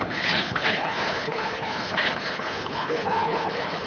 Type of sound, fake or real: fake